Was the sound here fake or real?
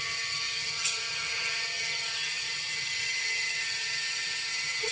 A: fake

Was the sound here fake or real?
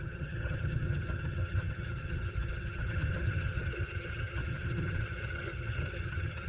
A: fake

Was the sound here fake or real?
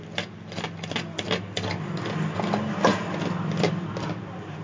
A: real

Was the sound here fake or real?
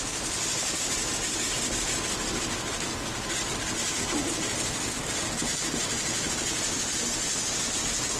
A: real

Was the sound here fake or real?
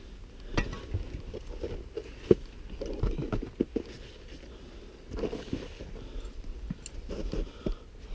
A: real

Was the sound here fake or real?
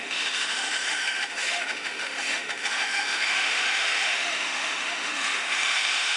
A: fake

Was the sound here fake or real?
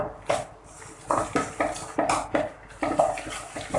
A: fake